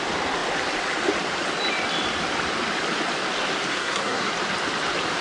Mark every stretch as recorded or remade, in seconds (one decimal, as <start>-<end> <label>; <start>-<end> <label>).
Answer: 0.0-3.7 recorded; 3.7-4.3 remade; 4.3-5.2 recorded